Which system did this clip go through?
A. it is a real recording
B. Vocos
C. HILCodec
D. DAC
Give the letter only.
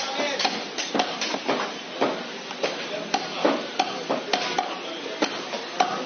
A